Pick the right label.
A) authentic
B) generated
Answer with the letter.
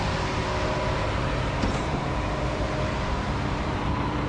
B